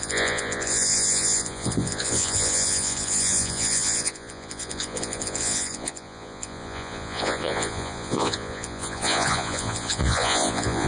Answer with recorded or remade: remade